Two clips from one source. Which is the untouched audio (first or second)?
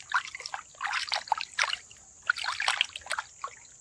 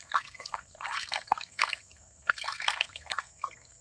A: first